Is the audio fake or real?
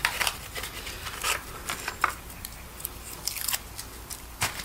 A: real